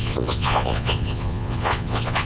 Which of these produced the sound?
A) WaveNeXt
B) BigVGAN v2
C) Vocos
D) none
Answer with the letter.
C